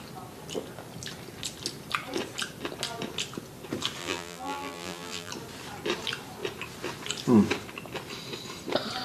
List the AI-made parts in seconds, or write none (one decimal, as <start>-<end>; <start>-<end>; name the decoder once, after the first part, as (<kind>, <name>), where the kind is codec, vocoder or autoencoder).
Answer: 4.0-5.3 (vocoder, BigVGAN v2)